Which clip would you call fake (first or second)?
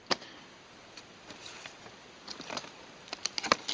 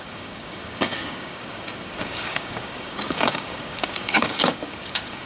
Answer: second